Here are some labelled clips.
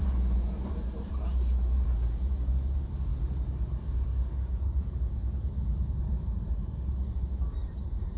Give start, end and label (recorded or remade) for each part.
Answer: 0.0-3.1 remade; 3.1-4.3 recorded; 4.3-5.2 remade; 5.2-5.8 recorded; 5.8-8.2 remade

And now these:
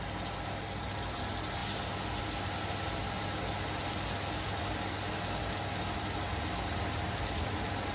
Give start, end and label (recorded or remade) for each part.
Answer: 0.0-7.9 recorded

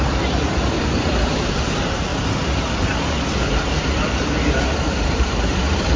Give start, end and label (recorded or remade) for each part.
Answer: 0.0-6.0 remade